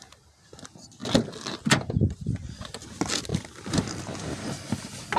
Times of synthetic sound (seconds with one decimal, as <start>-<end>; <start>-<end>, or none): none